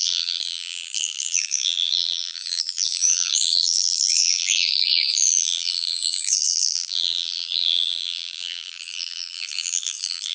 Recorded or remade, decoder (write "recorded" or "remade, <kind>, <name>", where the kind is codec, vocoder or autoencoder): remade, vocoder, BigVGAN v2